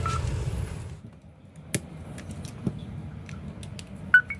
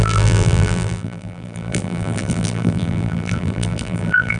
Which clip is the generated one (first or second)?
second